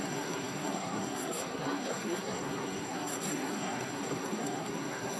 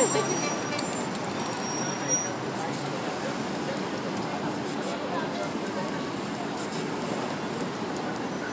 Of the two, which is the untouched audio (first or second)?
second